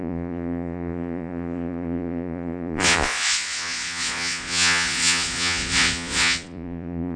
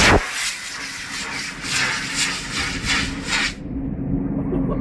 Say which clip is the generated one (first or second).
first